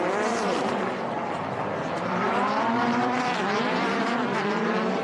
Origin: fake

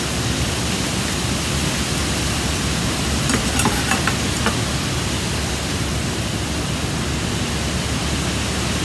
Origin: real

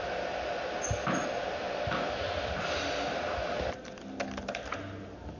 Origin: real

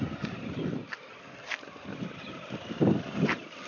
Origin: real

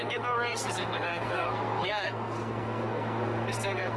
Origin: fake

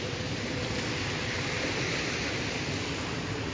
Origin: real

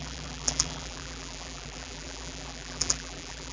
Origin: fake